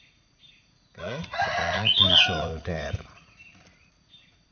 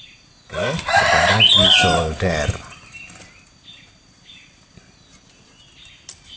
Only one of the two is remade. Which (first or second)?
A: first